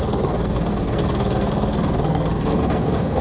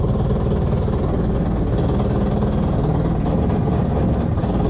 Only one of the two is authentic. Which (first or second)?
second